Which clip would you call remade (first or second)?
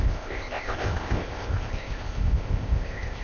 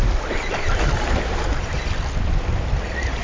first